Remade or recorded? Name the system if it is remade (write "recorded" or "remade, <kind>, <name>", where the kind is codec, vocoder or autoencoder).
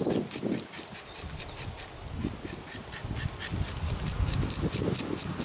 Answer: recorded